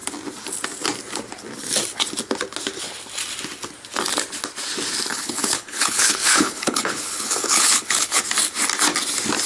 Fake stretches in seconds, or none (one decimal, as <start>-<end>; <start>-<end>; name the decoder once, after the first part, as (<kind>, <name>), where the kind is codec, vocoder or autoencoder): 5.1-8.2 (codec, HILCodec)